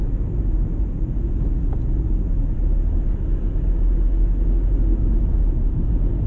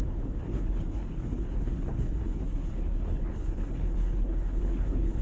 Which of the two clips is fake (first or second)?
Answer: second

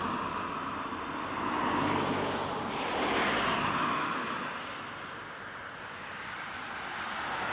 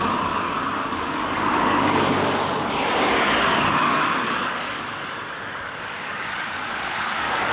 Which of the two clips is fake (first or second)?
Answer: second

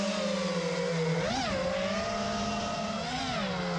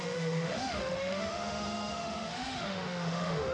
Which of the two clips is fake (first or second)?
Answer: second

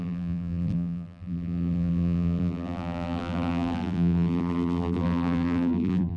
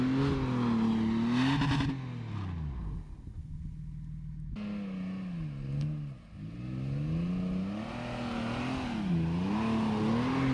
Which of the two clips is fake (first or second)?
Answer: first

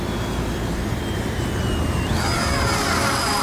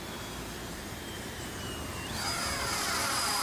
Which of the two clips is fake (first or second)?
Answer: second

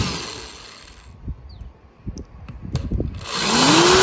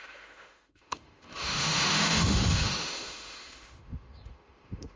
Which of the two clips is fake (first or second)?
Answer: second